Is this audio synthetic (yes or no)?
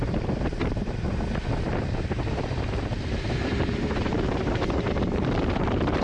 yes